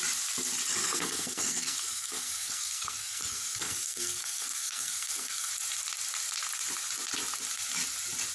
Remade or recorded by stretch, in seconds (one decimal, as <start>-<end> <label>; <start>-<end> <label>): 0.0-0.8 recorded; 0.8-5.5 remade; 5.5-8.3 recorded